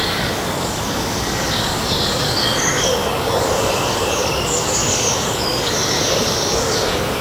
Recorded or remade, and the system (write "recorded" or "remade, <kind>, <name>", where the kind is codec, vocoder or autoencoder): remade, codec, DAC